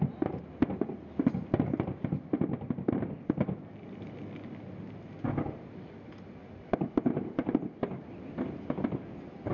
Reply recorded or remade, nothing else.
recorded